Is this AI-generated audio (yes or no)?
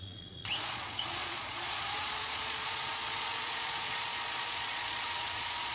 yes